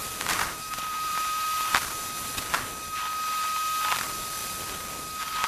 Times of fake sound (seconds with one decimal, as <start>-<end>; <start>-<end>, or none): 0.0-1.7; 4.4-5.5